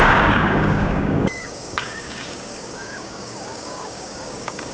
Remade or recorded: remade